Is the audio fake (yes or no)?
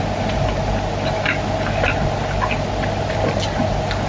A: no